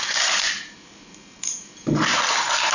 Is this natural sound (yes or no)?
no